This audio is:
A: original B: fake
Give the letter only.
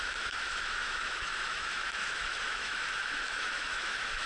B